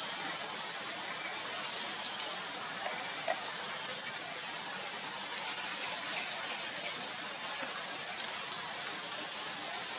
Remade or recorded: recorded